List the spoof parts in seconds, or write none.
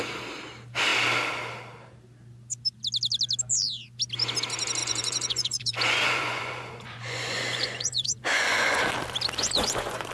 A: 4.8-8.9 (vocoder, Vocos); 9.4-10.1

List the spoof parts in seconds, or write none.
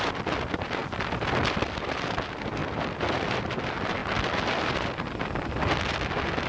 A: 2.6-3.4 (vocoder, BigVGAN v2)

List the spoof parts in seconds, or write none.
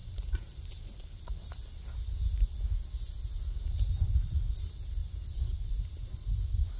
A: none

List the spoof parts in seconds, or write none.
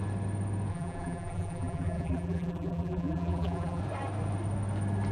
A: 0.7-3.8 (vocoder, BigVGAN v2)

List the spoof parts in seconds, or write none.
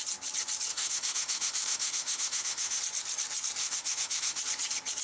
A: 0.7-2.8 (autoencoder, DAC-VAE); 3.6-4.4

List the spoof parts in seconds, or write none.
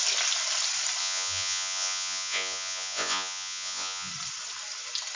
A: 1.0-4.1 (vocoder, Vocos)